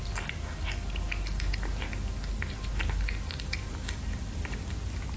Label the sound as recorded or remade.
recorded